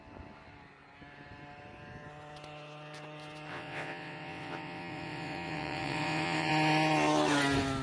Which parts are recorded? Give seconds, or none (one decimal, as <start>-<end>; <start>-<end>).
0.0-3.5; 6.5-7.8